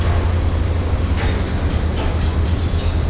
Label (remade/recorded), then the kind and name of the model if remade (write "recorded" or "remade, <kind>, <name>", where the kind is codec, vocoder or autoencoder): recorded